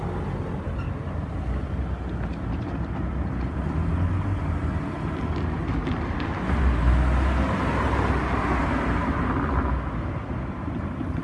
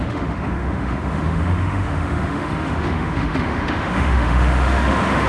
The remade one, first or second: second